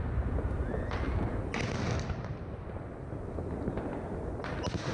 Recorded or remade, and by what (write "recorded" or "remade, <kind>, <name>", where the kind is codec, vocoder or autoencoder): recorded